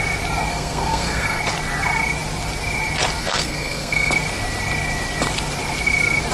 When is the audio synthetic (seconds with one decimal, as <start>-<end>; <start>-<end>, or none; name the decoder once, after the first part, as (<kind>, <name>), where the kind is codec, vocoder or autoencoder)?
0.5-1.4 (codec, SNAC); 3.2-4.1